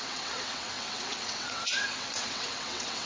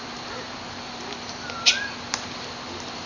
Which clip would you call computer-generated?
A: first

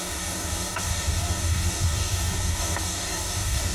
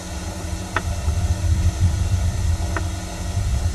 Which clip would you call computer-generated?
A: first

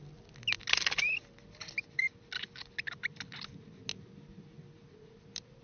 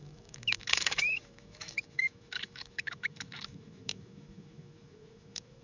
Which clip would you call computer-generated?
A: second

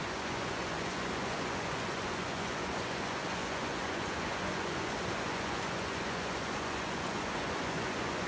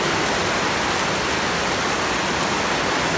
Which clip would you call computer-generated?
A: first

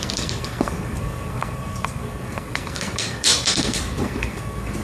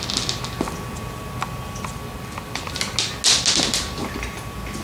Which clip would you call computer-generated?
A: first